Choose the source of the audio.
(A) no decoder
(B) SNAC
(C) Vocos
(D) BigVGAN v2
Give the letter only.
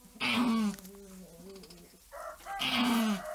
A